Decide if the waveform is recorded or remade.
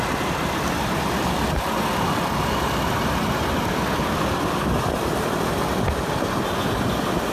recorded